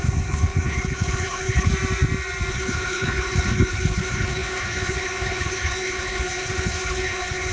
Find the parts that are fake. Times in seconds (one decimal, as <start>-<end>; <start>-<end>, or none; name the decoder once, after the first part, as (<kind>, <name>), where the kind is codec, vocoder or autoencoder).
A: 0.0-1.7 (codec, HILCodec); 2.5-7.5